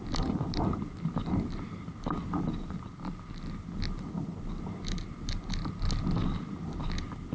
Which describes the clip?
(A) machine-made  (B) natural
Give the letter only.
B